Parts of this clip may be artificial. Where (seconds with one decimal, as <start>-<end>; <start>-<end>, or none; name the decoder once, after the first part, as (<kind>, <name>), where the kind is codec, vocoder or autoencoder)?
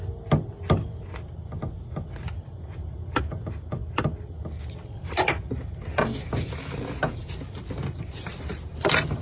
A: none